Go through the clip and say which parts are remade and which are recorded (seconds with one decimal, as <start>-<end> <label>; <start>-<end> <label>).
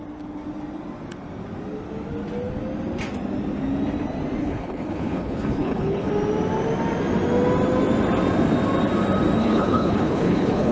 0.0-4.4 recorded; 4.4-6.1 remade; 6.1-9.4 recorded; 9.4-10.7 remade